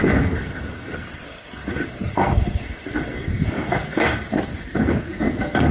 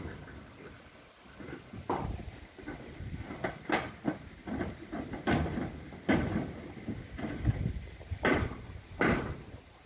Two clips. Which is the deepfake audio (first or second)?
first